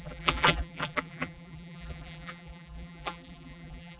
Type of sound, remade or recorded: remade